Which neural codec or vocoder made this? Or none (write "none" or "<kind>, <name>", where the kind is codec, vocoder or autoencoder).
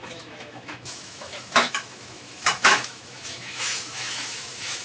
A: autoencoder, DAC-VAE